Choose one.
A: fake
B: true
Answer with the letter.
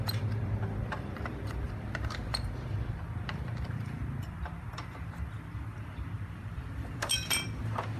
A